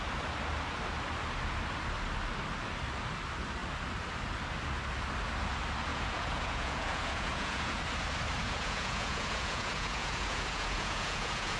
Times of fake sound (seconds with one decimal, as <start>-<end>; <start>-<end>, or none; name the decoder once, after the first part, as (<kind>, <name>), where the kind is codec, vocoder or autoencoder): 5.9-7.8 (vocoder, Vocos); 8.4-11.6